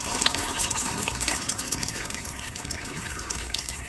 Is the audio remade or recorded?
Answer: remade